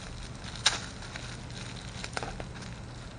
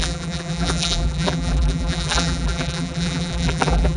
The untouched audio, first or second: first